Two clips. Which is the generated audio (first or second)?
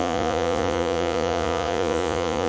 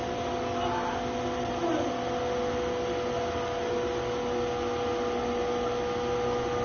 first